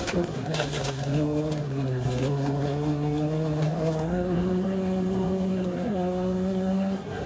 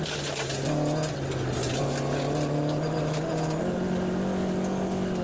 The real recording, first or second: second